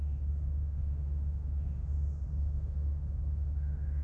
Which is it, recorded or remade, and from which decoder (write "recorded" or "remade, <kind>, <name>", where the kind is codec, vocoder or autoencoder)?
remade, autoencoder, DAC-VAE